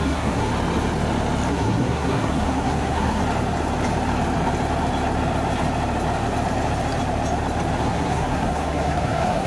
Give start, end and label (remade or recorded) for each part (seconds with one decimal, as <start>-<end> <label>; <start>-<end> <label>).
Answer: 0.0-0.5 remade; 0.5-1.5 recorded; 1.5-3.2 remade; 3.2-7.8 recorded; 7.8-9.5 remade